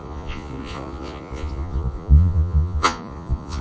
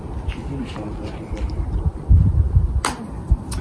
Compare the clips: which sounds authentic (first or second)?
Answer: second